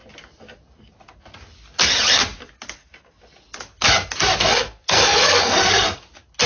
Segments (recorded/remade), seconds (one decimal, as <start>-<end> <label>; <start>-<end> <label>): 0.0-4.4 recorded; 4.4-6.0 remade; 6.0-6.5 recorded